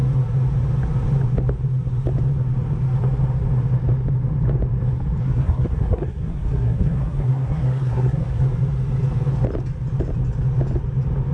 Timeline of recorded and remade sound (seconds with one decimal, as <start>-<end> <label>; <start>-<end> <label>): 0.0-5.2 recorded; 5.2-8.4 remade; 8.4-11.3 recorded